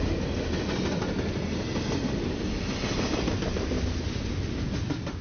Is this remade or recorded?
recorded